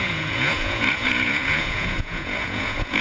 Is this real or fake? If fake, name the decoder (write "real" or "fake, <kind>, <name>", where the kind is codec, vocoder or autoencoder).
fake, vocoder, Vocos